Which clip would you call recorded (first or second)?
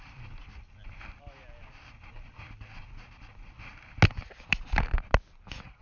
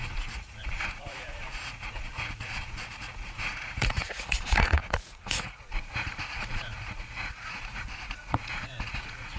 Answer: first